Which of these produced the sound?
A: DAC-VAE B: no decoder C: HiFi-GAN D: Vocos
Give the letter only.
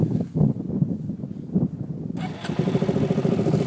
B